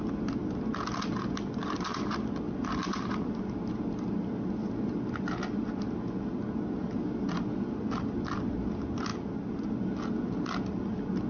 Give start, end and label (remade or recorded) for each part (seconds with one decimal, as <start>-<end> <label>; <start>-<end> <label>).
0.0-11.3 recorded